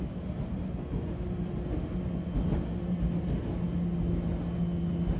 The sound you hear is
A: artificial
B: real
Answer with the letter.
B